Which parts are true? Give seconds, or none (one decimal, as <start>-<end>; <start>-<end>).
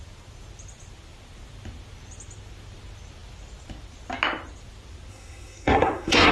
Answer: 0.0-5.1